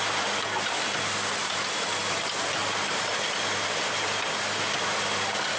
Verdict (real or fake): real